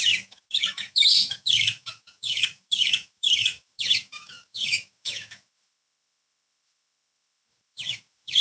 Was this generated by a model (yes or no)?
yes